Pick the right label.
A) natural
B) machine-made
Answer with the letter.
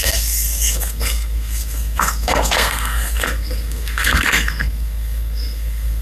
B